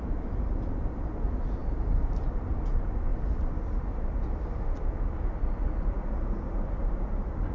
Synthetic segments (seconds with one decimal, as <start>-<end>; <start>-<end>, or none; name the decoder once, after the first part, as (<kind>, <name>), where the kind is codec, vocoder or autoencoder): none